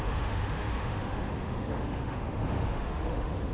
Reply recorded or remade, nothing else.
remade